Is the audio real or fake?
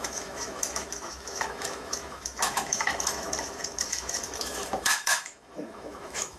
fake